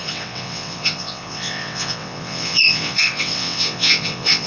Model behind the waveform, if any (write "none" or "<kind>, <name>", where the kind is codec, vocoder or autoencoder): vocoder, WaveNeXt